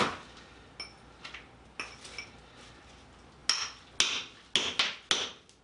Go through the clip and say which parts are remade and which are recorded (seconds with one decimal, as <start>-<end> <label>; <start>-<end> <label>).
0.0-5.6 recorded